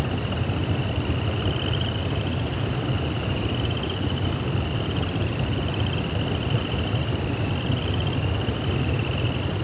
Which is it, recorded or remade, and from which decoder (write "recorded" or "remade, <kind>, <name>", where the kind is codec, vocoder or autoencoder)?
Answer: recorded